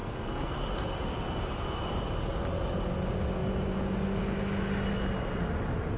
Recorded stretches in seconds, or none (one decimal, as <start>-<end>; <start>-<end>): 0.7-6.0